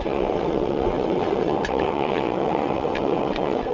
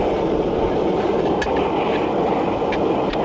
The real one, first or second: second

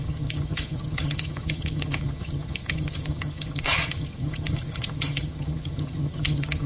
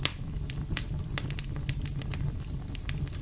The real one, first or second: second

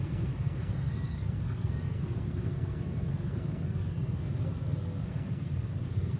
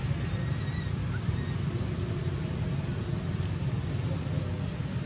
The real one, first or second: second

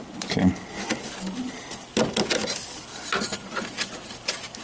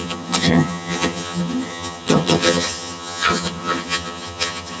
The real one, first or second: first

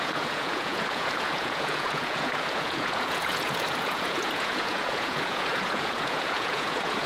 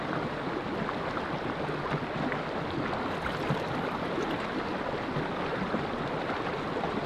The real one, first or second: second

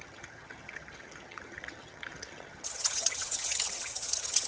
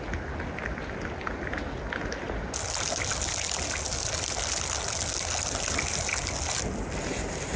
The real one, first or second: second